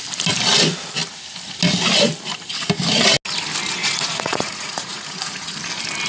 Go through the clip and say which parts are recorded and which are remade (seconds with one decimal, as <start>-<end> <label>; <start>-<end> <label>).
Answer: 0.0-3.8 recorded; 3.8-5.5 remade; 5.5-6.1 recorded